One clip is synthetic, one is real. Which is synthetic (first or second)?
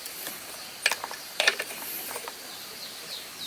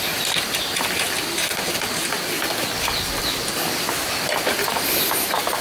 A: first